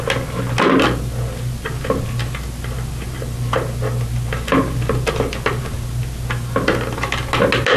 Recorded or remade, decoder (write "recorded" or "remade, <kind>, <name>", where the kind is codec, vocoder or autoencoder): recorded